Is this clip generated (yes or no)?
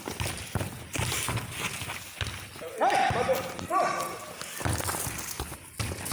no